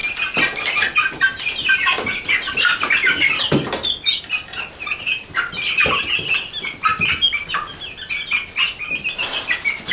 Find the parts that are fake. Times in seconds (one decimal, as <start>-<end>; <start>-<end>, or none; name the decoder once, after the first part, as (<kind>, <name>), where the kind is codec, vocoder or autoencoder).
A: none

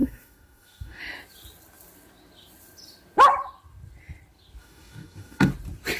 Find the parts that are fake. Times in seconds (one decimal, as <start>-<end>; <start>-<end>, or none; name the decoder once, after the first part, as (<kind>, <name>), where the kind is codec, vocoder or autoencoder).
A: 0.0-1.0 (codec, DAC); 4.6-5.5

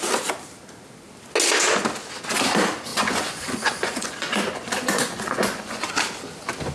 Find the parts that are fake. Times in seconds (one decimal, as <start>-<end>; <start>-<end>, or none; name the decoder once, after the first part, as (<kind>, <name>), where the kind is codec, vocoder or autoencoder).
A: 2.9-5.9 (vocoder, Vocos)

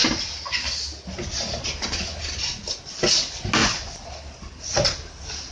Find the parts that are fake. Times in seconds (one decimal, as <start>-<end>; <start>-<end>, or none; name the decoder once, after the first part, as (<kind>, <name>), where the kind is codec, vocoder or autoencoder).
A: 3.6-5.1 (vocoder, BigVGAN v2)

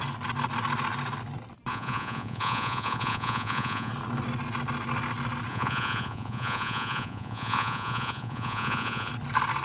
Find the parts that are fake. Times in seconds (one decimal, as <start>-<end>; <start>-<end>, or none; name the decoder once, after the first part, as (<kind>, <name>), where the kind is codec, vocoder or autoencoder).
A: 1.7-3.9 (vocoder, Vocos); 5.5-9.1